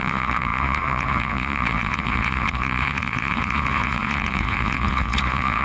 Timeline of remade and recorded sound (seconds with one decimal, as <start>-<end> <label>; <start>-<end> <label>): 0.0-5.6 remade